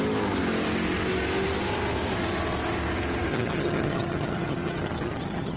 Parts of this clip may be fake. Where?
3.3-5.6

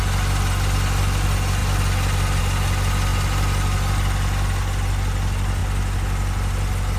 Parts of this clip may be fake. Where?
none

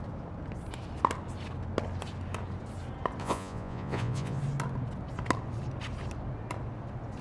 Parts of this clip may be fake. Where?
3.2-4.4